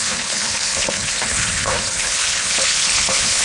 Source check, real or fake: fake